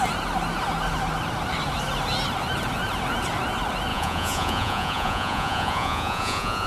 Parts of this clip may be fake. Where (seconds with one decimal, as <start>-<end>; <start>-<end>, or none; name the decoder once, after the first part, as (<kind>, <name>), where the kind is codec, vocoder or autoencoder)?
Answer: 3.9-6.7 (vocoder, Vocos)